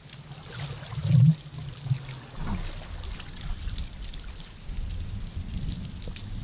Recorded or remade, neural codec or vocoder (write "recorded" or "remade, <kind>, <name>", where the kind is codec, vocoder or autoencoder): recorded